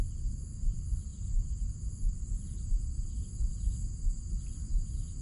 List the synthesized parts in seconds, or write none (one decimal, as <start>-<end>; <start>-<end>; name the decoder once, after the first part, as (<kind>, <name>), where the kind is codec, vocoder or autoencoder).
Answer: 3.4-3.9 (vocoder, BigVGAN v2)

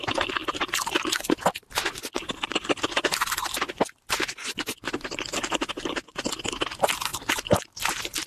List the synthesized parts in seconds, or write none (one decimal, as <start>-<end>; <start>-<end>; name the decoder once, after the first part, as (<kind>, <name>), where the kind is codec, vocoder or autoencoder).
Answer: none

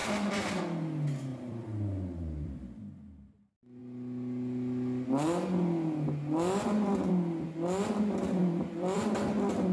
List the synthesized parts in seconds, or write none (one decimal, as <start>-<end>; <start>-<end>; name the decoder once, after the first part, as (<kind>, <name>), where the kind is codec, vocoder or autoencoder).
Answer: 0.0-0.6 (vocoder, BigVGAN v2); 1.3-2.8; 8.4-9.0

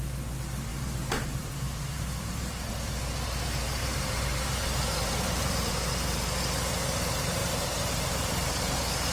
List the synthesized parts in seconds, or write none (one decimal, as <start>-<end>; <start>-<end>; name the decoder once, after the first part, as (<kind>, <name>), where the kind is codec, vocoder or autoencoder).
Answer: 0.7-2.7 (vocoder, BigVGAN v2); 3.8-5.7; 7.4-8.7